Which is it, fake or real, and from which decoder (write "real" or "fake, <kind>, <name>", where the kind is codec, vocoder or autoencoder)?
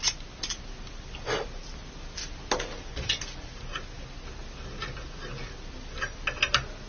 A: real